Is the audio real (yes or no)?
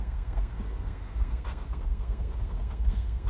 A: no